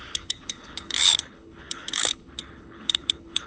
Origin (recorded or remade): remade